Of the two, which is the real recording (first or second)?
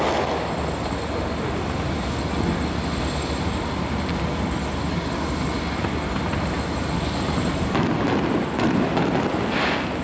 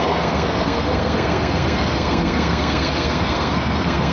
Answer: first